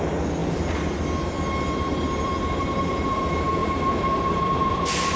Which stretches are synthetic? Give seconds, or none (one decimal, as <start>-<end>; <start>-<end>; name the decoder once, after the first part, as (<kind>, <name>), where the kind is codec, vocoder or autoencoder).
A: 0.0-5.2 (vocoder, BigVGAN v2)